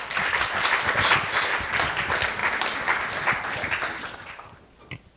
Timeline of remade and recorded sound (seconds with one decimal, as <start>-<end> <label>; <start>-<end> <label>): 0.0-5.2 recorded